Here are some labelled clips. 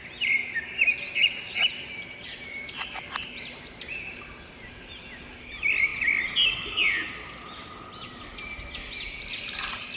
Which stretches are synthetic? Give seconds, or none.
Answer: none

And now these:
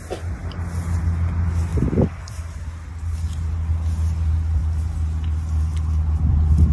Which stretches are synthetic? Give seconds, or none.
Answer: none

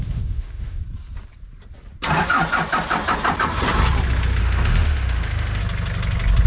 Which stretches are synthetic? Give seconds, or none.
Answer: 0.0-0.8; 4.4-5.6

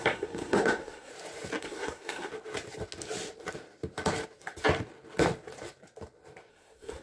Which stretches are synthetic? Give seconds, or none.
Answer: 0.0-1.1; 1.6-2.3; 6.5-7.0